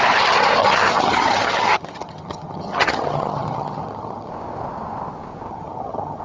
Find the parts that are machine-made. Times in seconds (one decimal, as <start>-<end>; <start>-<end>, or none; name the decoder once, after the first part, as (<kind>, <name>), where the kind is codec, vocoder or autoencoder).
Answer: 0.6-4.3 (vocoder, HiFi-GAN); 5.5-6.2